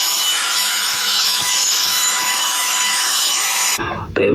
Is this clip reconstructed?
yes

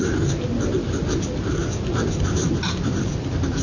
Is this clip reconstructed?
no